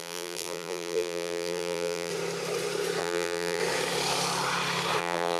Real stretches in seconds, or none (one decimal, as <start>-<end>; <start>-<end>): 2.1-3.0; 3.6-5.0